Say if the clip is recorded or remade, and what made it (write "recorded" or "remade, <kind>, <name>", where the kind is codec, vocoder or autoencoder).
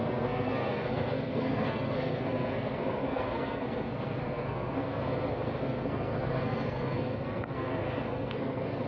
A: remade, codec, SNAC